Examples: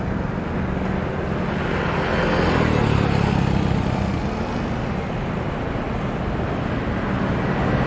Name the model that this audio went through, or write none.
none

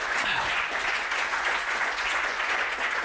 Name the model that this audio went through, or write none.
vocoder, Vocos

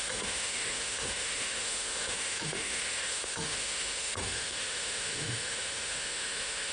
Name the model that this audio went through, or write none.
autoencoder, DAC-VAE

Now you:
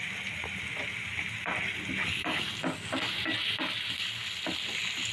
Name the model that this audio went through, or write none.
none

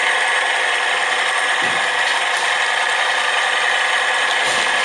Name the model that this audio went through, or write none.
none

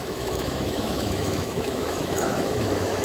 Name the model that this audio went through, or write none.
autoencoder, DAC-VAE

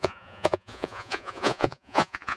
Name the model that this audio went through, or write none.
vocoder, Vocos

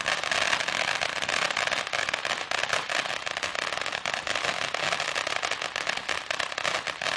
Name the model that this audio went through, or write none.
none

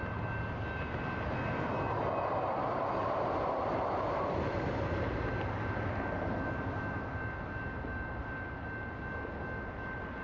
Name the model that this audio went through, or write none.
none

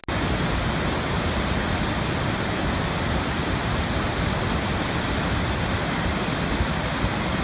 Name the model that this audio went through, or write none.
none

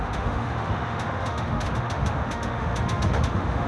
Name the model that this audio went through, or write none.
autoencoder, DAC-VAE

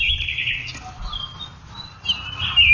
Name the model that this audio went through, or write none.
none